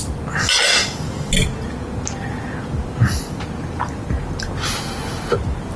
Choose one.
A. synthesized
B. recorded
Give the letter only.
B